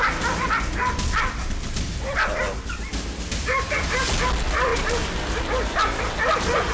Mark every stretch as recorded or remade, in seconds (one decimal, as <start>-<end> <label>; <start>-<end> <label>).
0.0-6.7 recorded